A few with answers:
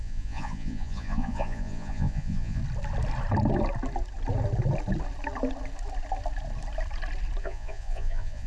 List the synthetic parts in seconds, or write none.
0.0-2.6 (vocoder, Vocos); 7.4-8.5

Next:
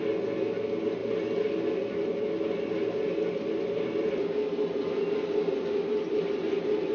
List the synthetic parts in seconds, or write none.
none